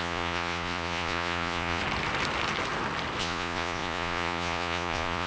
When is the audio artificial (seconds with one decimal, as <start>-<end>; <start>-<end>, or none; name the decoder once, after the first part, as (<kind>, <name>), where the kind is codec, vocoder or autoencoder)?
0.0-1.8 (vocoder, Vocos); 3.2-5.3